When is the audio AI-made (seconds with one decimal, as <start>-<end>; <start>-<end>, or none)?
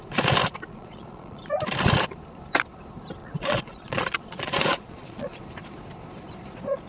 0.7-1.4; 3.2-5.4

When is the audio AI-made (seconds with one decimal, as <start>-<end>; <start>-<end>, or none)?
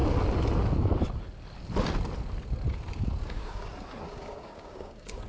3.2-3.6; 4.1-5.3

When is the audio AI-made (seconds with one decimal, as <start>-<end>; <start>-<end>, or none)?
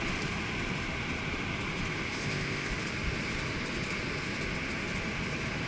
2.1-2.7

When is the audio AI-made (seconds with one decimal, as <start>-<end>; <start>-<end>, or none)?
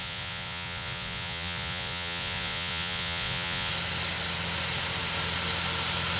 0.0-3.7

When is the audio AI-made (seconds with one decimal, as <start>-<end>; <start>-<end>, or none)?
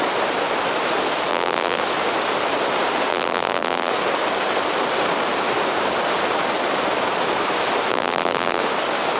1.3-1.8; 3.1-3.9; 7.9-8.6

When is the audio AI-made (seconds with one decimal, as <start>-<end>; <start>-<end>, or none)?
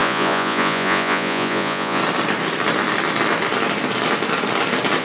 0.0-2.0